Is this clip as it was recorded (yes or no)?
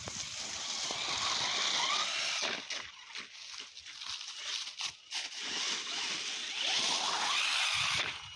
yes